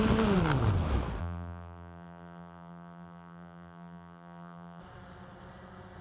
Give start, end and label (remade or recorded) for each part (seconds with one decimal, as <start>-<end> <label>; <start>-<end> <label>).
0.0-1.2 recorded; 1.2-4.8 remade; 4.8-6.0 recorded